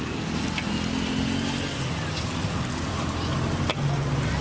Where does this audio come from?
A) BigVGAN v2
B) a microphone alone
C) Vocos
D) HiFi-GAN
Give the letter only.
B